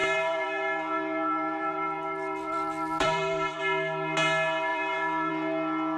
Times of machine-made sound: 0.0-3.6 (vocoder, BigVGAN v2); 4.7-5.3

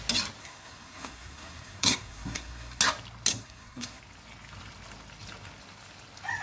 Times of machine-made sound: 0.4-2.8 (codec, SNAC); 3.3-4.0

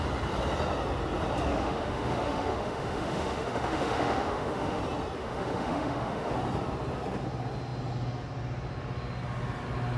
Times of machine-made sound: 1.5-4.8 (autoencoder, DAC-VAE); 5.2-6.3

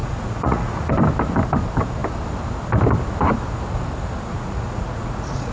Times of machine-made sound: 0.0-0.9 (vocoder, Vocos); 4.3-5.5

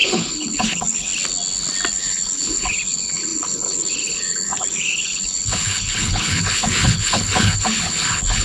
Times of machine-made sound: 0.0-1.1 (codec, HILCodec); 1.9-8.4

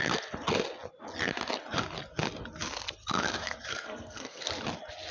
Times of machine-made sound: 3.7-4.4 (codec, SNAC)

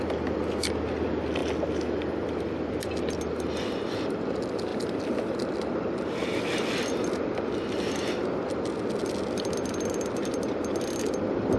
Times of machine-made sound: none

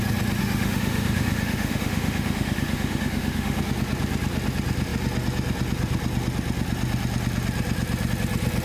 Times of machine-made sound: 0.4-3.6 (autoencoder, DAC-VAE)